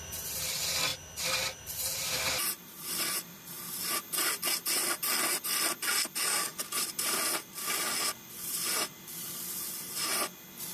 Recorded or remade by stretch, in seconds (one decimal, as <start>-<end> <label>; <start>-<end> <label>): 0.0-0.9 recorded; 0.9-3.5 remade; 3.5-6.5 recorded; 6.5-10.1 remade; 10.1-10.7 recorded